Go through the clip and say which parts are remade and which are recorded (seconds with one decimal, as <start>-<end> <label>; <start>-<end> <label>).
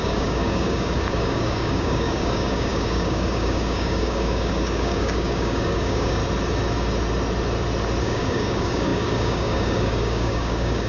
0.0-6.2 remade; 6.2-8.0 recorded; 8.0-10.9 remade